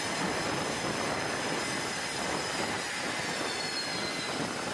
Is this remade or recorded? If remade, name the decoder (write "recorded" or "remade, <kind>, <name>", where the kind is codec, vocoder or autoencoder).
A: recorded